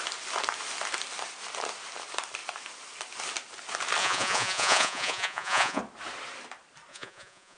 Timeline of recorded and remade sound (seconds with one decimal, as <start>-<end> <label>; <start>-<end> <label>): 0.0-4.0 recorded; 4.0-5.8 remade; 5.8-6.9 recorded; 6.9-7.6 remade